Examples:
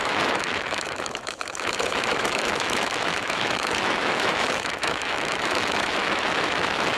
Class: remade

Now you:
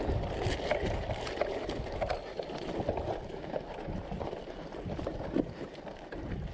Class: recorded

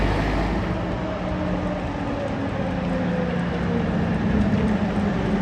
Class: recorded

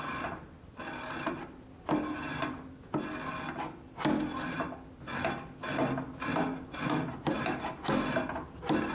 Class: recorded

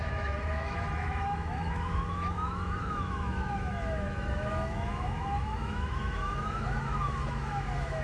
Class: remade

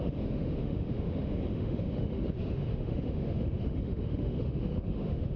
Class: remade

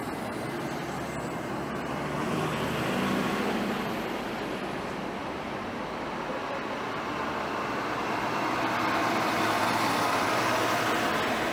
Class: recorded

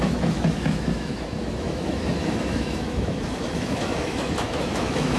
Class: remade